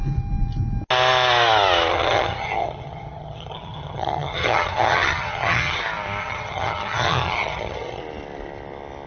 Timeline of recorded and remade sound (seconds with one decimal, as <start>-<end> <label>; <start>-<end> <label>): 0.0-1.9 recorded; 1.9-5.8 remade; 5.8-6.2 recorded; 6.2-8.0 remade; 8.0-9.1 recorded